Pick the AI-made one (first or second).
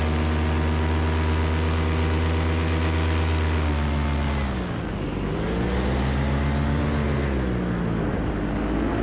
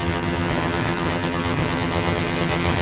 second